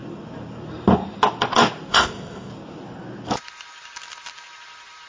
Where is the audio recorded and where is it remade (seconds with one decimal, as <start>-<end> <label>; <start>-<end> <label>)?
0.0-1.9 recorded; 1.9-2.5 remade; 2.5-5.1 recorded